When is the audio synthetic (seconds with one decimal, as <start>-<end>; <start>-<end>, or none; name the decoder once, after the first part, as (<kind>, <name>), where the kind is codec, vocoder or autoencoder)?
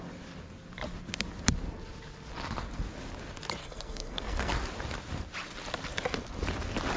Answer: 3.6-4.5 (codec, SNAC)